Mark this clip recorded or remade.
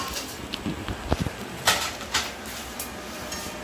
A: recorded